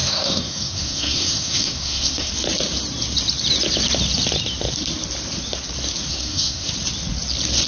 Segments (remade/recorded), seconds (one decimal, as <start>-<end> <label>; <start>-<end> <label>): 0.0-2.3 remade; 2.3-6.1 recorded; 6.1-6.7 remade; 6.7-7.7 recorded